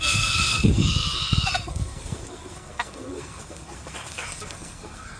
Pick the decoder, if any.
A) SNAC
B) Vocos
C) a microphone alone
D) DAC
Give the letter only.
A